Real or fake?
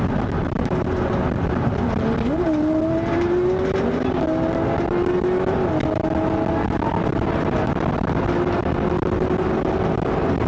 real